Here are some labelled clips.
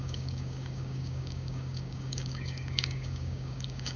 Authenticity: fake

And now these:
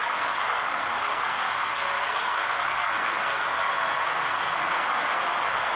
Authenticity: fake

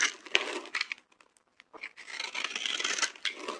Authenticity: real